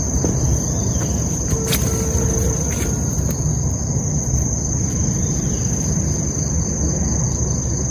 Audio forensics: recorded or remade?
recorded